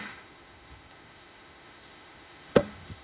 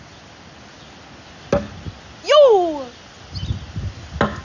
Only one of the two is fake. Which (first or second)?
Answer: first